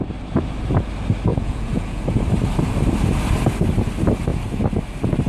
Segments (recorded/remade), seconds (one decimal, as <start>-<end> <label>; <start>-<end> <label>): 0.0-1.3 recorded; 1.3-2.0 remade; 2.0-5.3 recorded